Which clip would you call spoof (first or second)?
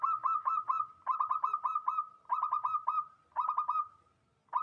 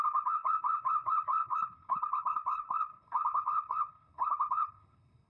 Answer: second